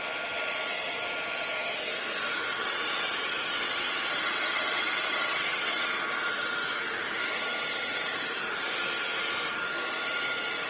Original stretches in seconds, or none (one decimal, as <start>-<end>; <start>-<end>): 0.0-2.5; 5.9-7.5; 8.1-10.7